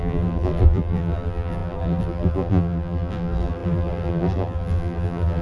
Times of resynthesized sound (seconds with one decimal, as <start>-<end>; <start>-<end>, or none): 0.0-5.4